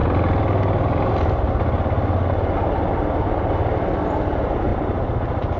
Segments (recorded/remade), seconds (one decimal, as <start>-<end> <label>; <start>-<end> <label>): 0.0-5.6 recorded

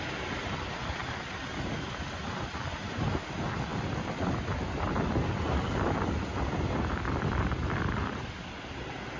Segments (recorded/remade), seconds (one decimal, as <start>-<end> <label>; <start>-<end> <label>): 0.0-9.2 recorded

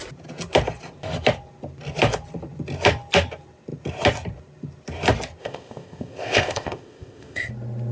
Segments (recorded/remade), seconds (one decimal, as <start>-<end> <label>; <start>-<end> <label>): 0.0-5.4 recorded; 5.4-7.5 remade; 7.5-7.9 recorded

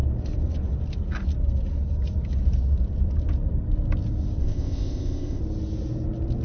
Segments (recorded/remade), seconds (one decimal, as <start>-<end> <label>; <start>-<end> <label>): 0.0-4.4 recorded; 4.4-5.4 remade; 5.4-6.4 recorded

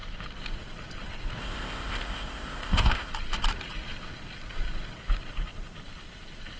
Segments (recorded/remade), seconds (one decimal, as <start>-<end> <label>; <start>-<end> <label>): 0.0-1.4 recorded; 1.4-3.1 remade; 3.1-6.6 recorded

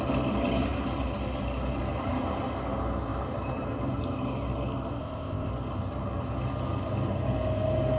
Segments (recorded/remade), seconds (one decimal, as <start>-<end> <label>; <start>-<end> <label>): 0.0-5.0 recorded; 5.0-5.5 remade; 5.5-8.0 recorded

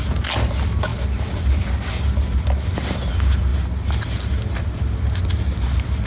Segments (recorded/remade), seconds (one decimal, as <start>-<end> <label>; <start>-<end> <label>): 0.0-6.1 recorded